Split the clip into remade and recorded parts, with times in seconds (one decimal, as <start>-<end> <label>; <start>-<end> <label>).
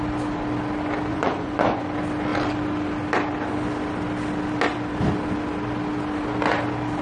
0.0-1.1 recorded; 1.1-1.8 remade; 1.8-7.0 recorded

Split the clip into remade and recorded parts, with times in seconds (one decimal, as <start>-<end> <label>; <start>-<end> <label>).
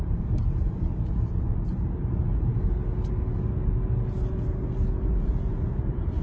0.0-2.5 remade; 2.5-5.1 recorded; 5.1-6.2 remade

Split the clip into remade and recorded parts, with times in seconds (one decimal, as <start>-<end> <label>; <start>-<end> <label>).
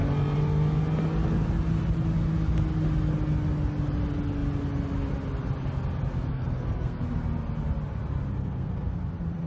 0.0-6.3 recorded; 6.3-7.0 remade; 7.0-8.4 recorded; 8.4-9.0 remade; 9.0-9.5 recorded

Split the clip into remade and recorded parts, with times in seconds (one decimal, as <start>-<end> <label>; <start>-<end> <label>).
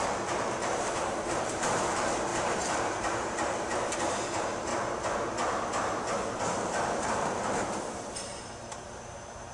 0.0-4.7 remade; 4.7-6.4 recorded; 6.4-9.5 remade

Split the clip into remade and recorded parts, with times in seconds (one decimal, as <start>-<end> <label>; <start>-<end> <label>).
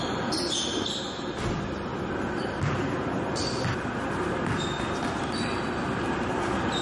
0.0-6.8 recorded